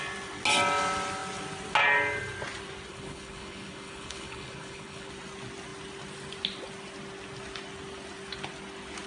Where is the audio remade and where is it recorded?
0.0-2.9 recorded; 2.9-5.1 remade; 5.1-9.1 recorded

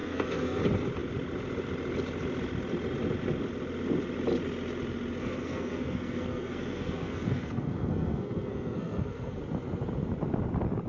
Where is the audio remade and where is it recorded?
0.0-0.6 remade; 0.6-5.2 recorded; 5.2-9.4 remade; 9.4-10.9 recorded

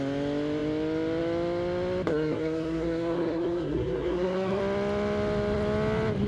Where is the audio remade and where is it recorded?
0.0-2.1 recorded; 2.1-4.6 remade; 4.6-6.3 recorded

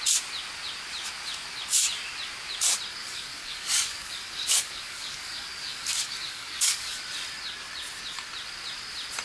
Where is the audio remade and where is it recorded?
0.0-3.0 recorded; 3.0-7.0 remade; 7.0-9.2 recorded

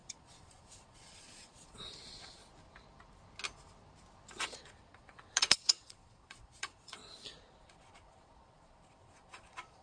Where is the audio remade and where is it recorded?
0.0-2.4 remade; 2.4-4.4 recorded; 4.4-7.0 remade; 7.0-7.6 recorded; 7.6-9.8 remade

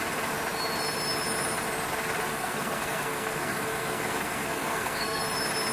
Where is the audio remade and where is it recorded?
0.0-2.3 recorded; 2.3-5.2 remade; 5.2-5.7 recorded

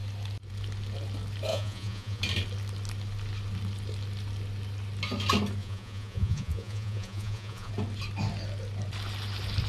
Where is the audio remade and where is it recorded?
0.0-1.5 recorded; 1.5-2.2 remade; 2.2-5.6 recorded; 5.6-7.7 remade; 7.7-9.7 recorded

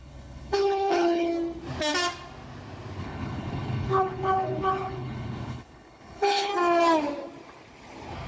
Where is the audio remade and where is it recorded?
0.0-1.3 remade; 1.3-3.0 recorded; 3.0-6.5 remade; 6.5-8.3 recorded